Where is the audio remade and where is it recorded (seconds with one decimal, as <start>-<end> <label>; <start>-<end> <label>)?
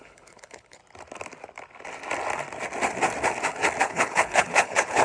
0.0-0.8 remade; 0.8-3.8 recorded; 3.8-5.0 remade